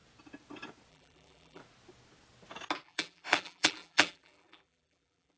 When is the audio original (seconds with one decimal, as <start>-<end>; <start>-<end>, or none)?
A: 0.0-0.9; 1.6-2.8

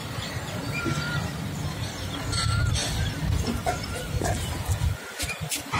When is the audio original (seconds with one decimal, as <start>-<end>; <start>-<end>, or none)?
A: 0.6-5.8

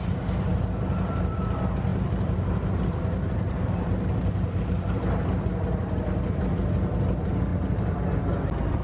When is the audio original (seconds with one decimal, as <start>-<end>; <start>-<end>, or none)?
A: 0.0-1.9; 4.6-8.8

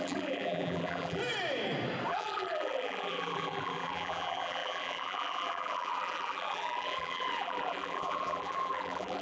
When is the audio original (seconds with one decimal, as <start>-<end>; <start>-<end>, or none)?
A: 1.2-2.1

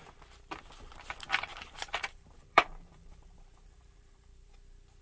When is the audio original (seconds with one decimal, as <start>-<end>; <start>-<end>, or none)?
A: 0.0-1.5; 4.5-5.0